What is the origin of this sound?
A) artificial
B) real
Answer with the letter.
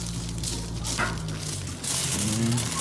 B